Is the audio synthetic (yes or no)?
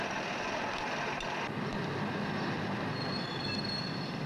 no